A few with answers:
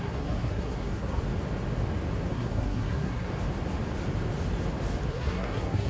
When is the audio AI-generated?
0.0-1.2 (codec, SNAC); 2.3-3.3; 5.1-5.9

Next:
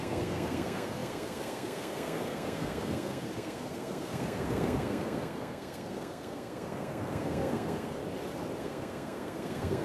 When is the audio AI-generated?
0.0-8.0 (codec, SNAC); 8.6-9.8

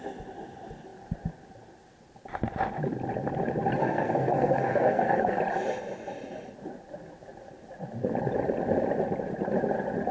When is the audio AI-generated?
3.8-5.4 (codec, SNAC)

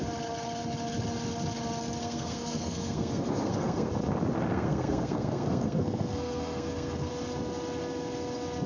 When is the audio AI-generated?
2.0-3.9 (codec, SNAC); 4.5-7.1

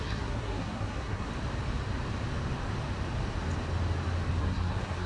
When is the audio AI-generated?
0.0-1.3 (codec, SNAC); 4.4-5.1